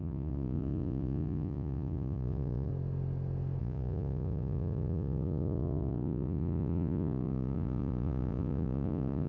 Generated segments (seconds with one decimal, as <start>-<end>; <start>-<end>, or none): 0.0-2.7; 3.6-9.3